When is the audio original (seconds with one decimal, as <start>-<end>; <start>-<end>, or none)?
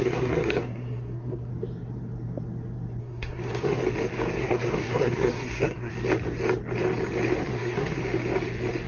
1.5-3.0; 3.8-4.4; 5.9-7.4; 8.0-8.9